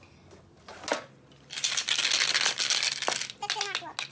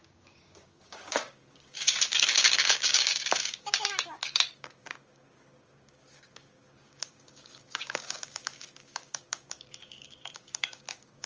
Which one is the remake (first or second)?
second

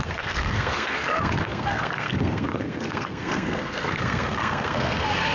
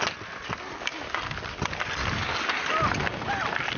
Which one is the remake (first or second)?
first